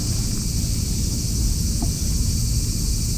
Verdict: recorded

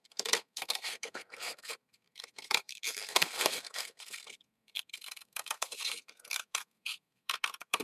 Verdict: remade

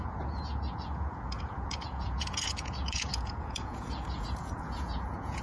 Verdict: remade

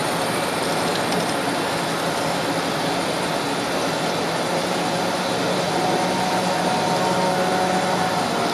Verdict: recorded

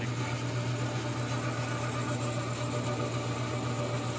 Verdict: recorded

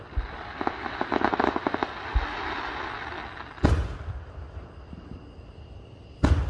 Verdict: recorded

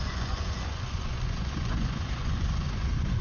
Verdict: remade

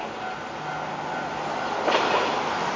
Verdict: recorded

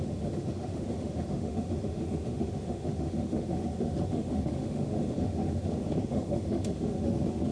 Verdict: remade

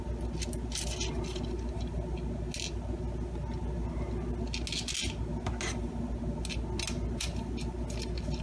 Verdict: recorded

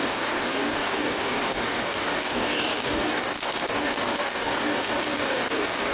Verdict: remade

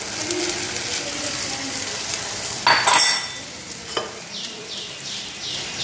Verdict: recorded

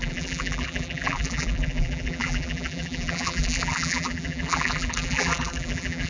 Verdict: remade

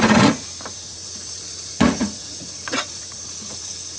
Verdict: remade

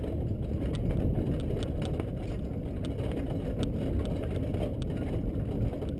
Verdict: recorded